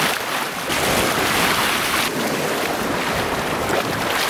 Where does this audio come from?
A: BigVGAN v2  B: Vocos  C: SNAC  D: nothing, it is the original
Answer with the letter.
D